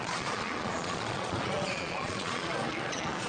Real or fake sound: fake